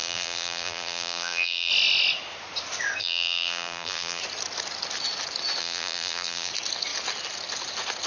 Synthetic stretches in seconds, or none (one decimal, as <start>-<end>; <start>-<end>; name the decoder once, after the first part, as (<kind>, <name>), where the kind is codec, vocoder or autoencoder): 0.0-1.7 (vocoder, BigVGAN v2); 3.0-4.2; 5.6-6.5